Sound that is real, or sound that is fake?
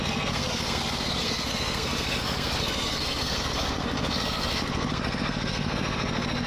fake